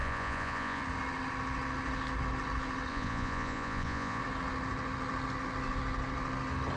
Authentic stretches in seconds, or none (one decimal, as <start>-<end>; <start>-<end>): 0.8-2.9; 4.2-6.8